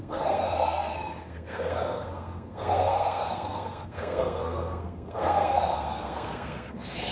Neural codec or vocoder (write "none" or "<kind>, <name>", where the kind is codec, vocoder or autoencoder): codec, SNAC